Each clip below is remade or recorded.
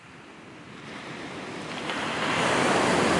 recorded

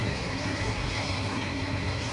remade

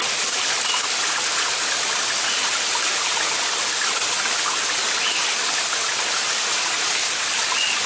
recorded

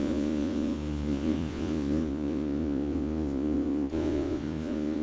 remade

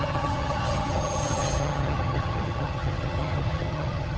remade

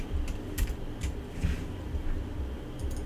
recorded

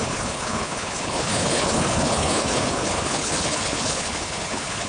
remade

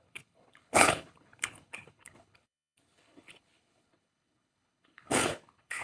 remade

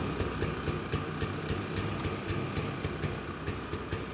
recorded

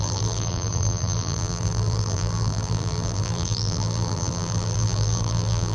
remade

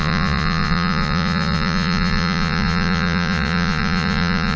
remade